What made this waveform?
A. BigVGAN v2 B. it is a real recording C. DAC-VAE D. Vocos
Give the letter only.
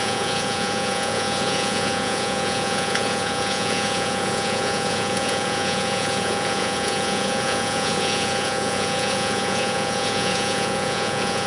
D